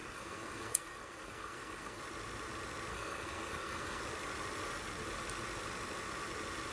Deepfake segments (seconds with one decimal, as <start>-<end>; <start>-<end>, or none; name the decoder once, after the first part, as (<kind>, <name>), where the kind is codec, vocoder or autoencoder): 0.0-2.0 (codec, SNAC); 2.9-4.0